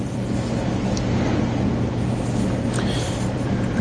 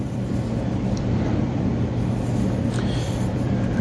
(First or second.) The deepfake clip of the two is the second